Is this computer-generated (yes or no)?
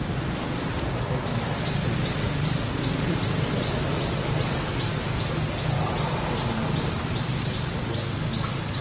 no